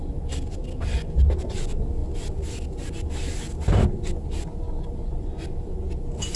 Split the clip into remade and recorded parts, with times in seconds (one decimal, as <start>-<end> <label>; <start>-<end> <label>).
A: 0.0-6.4 recorded